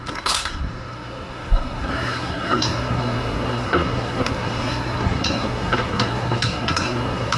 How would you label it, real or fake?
fake